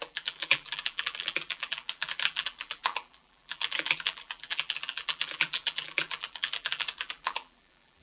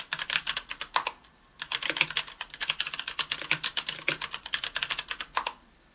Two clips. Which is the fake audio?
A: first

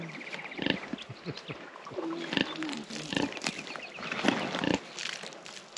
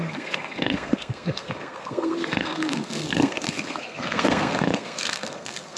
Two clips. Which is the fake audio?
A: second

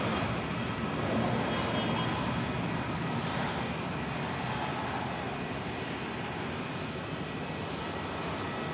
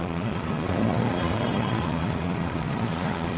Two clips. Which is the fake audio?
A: second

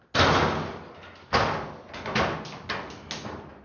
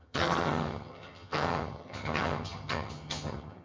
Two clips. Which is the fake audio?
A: second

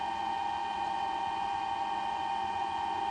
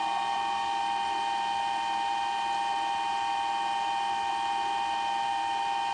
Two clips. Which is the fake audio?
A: first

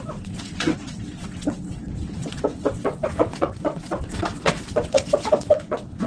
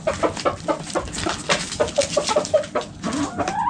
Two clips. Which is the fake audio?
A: first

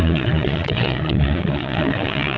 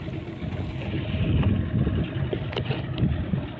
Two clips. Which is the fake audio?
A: first